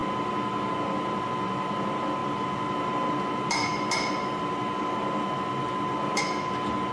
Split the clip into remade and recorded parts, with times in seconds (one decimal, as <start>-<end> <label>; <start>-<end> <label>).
0.0-6.9 recorded